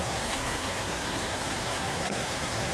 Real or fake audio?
fake